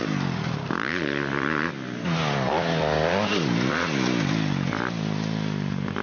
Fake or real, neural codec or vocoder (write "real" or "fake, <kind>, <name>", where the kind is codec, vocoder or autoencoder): real